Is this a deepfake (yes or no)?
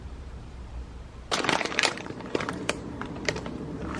yes